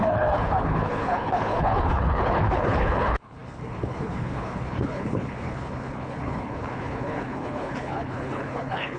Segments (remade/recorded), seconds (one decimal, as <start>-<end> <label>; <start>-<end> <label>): 0.0-9.0 remade